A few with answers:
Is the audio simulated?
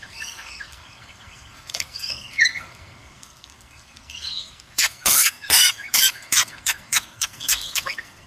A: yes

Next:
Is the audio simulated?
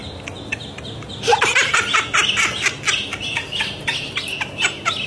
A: no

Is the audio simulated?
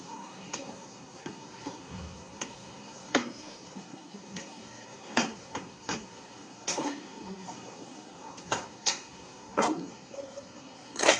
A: yes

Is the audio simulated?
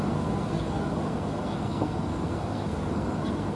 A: yes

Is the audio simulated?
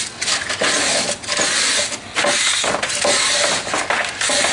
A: no